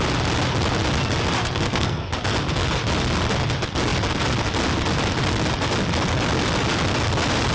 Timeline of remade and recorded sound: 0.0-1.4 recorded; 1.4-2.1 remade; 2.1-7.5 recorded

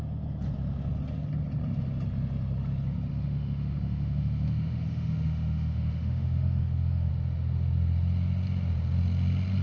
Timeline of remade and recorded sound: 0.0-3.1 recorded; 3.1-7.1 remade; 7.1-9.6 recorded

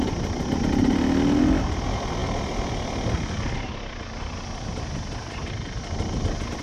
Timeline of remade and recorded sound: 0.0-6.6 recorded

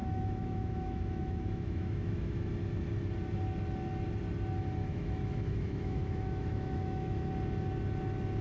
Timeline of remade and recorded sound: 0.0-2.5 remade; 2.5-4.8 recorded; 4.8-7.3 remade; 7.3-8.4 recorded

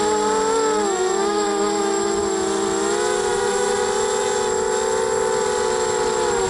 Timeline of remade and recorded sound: 0.0-1.2 recorded; 1.2-2.2 remade; 2.2-6.5 recorded

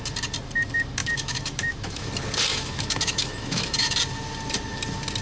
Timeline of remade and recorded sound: 0.0-1.0 recorded; 1.0-2.1 remade; 2.1-2.5 recorded; 2.5-4.0 remade; 4.0-5.2 recorded